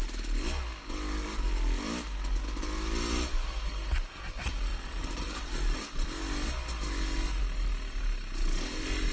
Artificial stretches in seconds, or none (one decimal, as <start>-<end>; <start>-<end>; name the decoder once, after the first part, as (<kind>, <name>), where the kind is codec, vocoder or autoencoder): 4.7-5.8 (vocoder, BigVGAN v2)